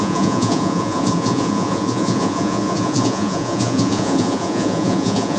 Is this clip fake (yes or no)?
yes